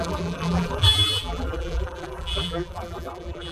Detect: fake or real fake